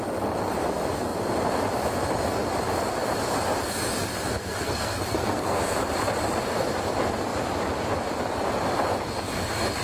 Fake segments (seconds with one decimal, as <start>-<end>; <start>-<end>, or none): 4.4-5.6